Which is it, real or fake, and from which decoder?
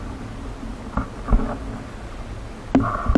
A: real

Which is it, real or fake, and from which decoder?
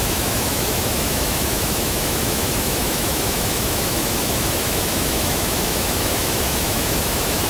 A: fake, autoencoder, DAC-VAE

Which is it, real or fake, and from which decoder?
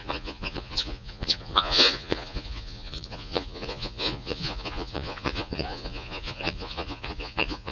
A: fake, vocoder, Vocos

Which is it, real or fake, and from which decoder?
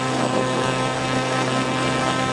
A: fake, codec, SNAC